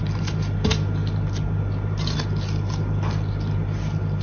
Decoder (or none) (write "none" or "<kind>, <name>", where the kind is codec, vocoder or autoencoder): none